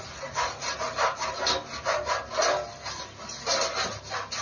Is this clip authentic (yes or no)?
yes